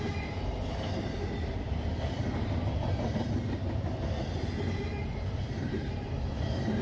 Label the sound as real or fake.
real